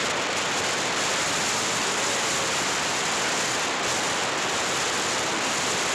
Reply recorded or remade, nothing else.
recorded